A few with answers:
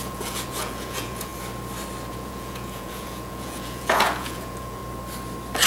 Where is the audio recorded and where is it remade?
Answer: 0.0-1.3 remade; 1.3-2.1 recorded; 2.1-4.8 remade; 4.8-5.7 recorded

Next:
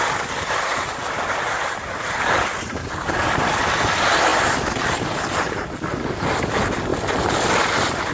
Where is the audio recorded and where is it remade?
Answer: 0.0-8.1 recorded

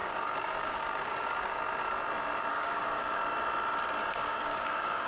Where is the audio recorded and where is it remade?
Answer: 0.0-1.6 remade; 1.6-2.5 recorded; 2.5-3.2 remade; 3.2-4.0 recorded; 4.0-5.1 remade

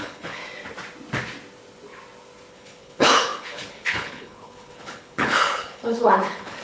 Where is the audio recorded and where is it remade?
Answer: 0.0-0.4 remade; 0.4-2.5 recorded; 2.5-6.6 remade

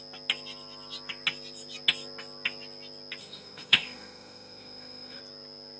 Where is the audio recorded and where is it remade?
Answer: 0.0-3.2 recorded; 3.2-5.2 remade; 5.2-5.8 recorded

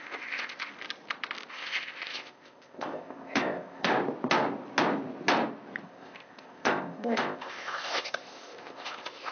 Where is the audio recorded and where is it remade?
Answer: 0.0-0.7 remade; 0.7-1.5 recorded; 1.5-3.9 remade; 3.9-5.8 recorded; 5.8-9.3 remade

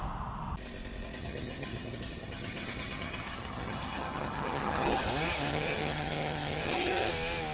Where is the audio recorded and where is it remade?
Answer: 0.0-1.2 recorded; 1.2-5.0 remade; 5.0-5.5 recorded; 5.5-7.1 remade; 7.1-7.5 recorded